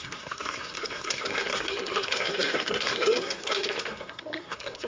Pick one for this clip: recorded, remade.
remade